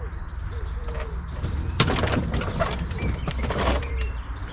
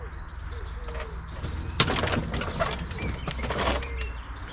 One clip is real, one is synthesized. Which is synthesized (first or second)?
first